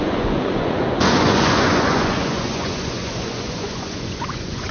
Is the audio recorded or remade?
remade